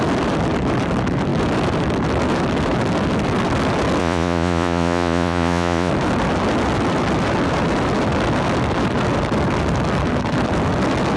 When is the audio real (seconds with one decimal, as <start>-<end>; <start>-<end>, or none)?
0.0-4.0; 5.9-11.2

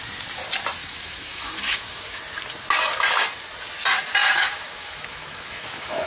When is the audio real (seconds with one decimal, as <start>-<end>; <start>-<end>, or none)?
0.0-0.8; 2.2-4.2

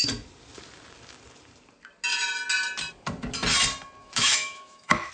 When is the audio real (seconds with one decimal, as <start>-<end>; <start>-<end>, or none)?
0.0-4.0

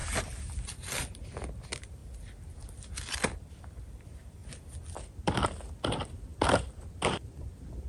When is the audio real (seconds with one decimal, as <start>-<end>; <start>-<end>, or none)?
0.0-1.0; 2.0-3.9; 4.4-5.7

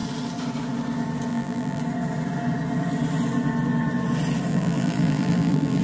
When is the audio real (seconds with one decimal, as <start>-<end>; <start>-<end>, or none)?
0.0-1.3; 1.8-4.5

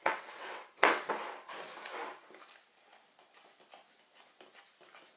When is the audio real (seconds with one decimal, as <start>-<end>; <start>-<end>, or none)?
1.1-5.2